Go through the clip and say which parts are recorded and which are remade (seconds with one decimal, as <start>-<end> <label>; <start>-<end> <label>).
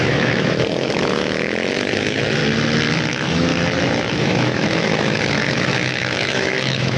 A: 0.0-2.4 remade; 2.4-3.1 recorded; 3.1-3.5 remade; 3.5-4.1 recorded; 4.1-7.0 remade